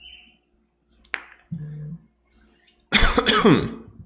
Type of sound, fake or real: real